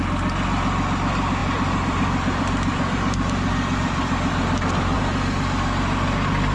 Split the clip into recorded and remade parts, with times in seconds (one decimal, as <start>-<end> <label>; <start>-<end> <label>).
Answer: 0.0-1.4 recorded; 1.4-5.0 remade; 5.0-6.5 recorded